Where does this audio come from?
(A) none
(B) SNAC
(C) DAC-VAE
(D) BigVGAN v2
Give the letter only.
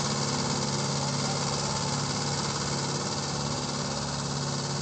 A